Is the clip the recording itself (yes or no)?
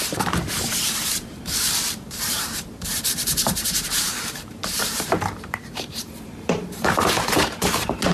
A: no